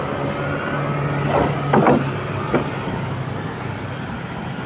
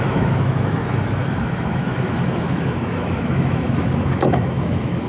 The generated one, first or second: second